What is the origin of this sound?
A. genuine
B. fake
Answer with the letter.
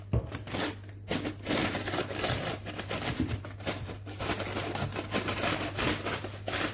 A